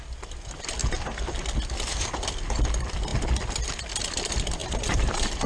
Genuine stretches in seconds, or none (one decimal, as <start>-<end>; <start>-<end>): 0.0-0.8; 1.4-4.6